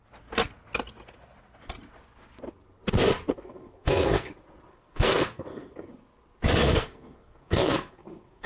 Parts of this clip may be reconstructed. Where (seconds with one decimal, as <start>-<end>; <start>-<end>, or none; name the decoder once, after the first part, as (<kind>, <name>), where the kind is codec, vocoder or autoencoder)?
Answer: 3.3-4.3 (codec, SNAC); 4.7-5.9; 6.6-8.5